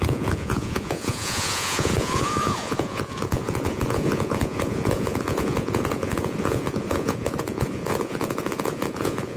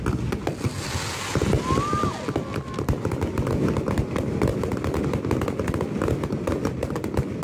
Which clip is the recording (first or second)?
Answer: second